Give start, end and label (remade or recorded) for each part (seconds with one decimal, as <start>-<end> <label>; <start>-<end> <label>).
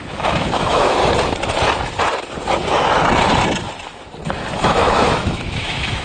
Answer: 0.0-1.0 remade; 1.0-4.6 recorded; 4.6-6.0 remade